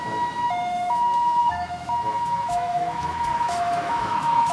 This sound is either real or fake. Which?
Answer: fake